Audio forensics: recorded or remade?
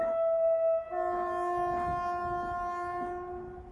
recorded